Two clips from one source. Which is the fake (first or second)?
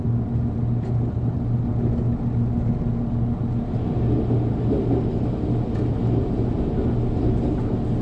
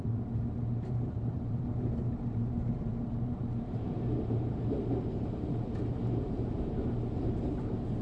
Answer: second